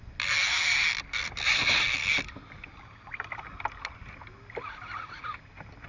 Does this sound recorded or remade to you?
recorded